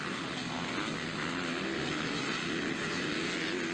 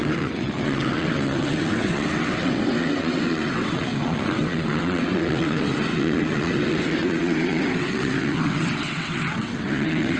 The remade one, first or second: second